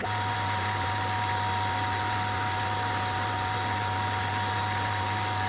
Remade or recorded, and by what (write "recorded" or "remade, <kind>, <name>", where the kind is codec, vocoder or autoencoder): recorded